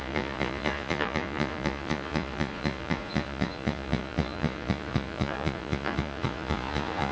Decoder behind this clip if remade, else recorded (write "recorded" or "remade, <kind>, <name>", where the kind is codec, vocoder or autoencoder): remade, vocoder, Vocos